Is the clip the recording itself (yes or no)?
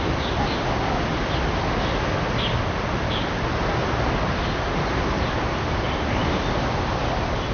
yes